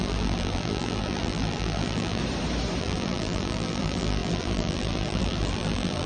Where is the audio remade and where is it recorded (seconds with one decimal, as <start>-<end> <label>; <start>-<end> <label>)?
0.0-2.2 remade; 2.2-2.8 recorded; 2.8-6.1 remade